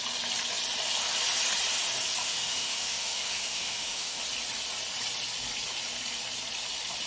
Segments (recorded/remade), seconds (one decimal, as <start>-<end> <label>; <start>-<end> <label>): 0.0-2.2 recorded; 2.2-4.2 remade; 4.2-7.1 recorded